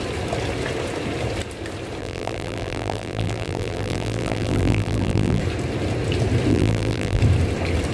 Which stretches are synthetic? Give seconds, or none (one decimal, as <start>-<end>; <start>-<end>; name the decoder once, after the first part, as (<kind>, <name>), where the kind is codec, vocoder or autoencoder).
2.0-5.4 (vocoder, BigVGAN v2); 6.5-7.2